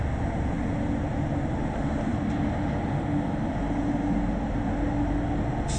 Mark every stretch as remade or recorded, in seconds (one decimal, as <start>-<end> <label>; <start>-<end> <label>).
0.0-5.8 recorded